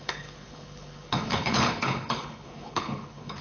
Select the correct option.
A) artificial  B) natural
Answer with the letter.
A